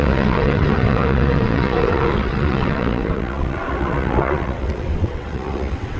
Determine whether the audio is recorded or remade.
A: remade